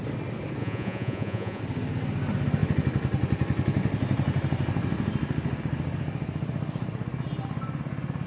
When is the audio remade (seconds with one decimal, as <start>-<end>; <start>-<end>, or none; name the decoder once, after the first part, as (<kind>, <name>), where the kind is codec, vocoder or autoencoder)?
0.6-1.6 (vocoder, Vocos)